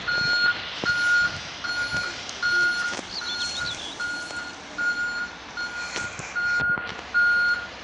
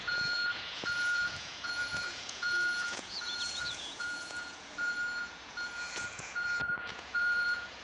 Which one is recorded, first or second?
first